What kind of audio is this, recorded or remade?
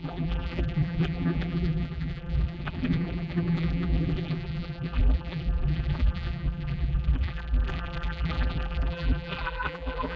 remade